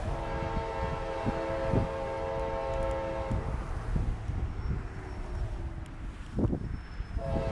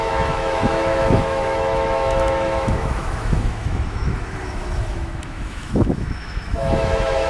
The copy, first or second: second